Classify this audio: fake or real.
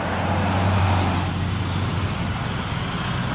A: real